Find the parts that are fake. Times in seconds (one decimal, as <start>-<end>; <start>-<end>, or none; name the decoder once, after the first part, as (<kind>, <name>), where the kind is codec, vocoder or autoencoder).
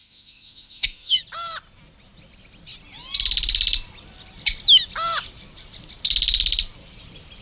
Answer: 0.0-1.2 (autoencoder, DAC-VAE)